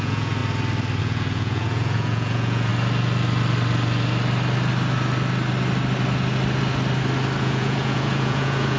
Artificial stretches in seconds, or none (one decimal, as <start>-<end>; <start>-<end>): 0.0-0.4; 1.0-2.7; 7.4-8.8